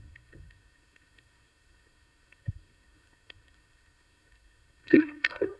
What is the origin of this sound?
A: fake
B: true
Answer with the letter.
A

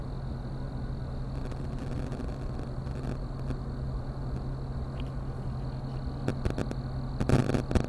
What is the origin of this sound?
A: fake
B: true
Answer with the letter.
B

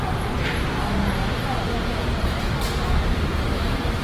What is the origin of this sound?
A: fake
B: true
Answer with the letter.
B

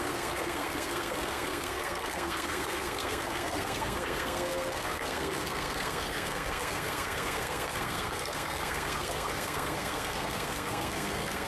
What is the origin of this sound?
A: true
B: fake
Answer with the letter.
B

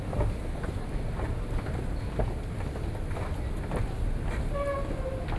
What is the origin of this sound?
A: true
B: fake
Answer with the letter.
A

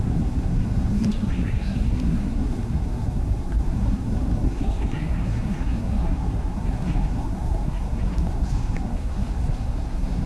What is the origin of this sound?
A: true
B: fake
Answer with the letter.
B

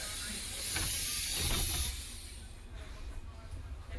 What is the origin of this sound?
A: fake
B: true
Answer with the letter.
B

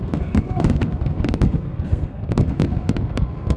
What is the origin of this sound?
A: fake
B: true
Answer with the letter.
A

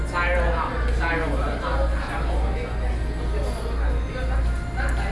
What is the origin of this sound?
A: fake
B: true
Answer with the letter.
B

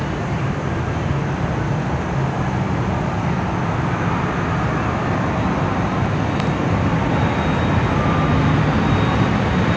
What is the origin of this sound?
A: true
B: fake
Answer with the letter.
A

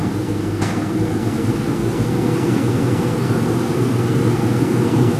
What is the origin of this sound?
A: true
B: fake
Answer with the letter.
B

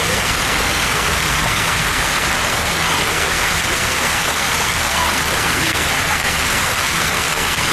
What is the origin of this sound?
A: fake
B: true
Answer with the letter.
A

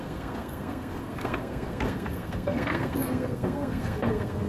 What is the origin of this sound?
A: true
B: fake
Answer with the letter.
B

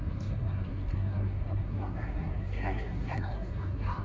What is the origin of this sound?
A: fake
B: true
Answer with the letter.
A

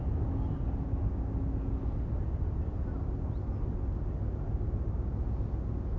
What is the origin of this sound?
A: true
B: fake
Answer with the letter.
A